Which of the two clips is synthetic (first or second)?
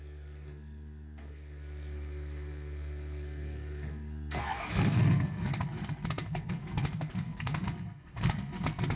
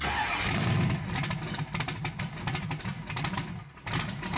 first